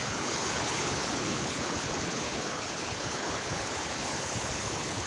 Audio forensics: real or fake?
fake